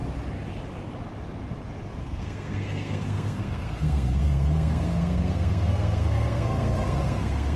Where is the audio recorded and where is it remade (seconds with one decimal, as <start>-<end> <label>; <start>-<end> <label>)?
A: 0.0-2.0 recorded; 2.0-7.6 remade